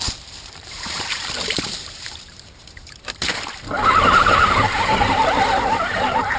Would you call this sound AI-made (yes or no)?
yes